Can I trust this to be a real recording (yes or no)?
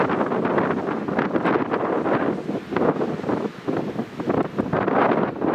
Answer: yes